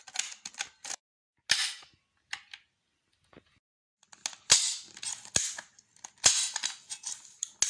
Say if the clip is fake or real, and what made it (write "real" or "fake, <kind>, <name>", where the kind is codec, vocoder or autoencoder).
real